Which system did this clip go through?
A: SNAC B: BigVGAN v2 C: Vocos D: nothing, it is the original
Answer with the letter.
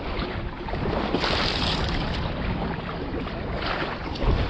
D